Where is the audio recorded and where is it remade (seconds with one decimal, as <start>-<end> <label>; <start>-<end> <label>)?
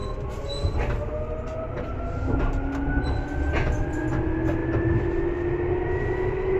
0.0-6.6 recorded